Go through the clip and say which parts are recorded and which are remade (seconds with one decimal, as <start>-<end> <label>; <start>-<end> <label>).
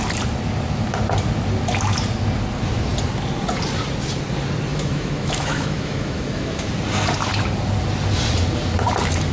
0.0-4.7 recorded; 4.7-6.7 remade; 6.7-9.3 recorded